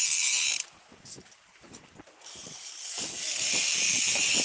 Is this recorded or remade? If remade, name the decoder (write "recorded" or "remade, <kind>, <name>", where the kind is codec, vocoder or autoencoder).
remade, vocoder, BigVGAN v2